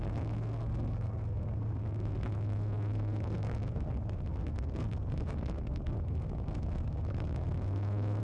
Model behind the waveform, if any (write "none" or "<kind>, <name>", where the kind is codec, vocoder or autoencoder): codec, SNAC